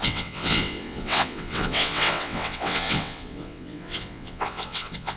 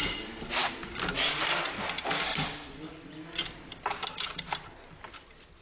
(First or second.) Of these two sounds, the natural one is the second